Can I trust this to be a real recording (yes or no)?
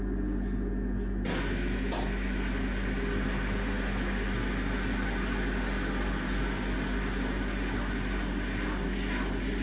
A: yes